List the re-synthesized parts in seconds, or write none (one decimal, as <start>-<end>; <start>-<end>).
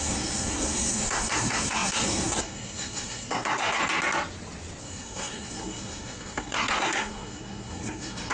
0.0-3.8; 4.8-8.3